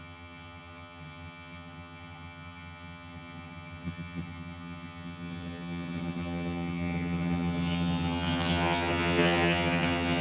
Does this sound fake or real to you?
fake